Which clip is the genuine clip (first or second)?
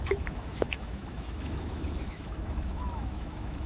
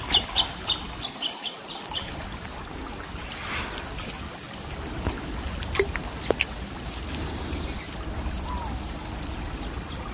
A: second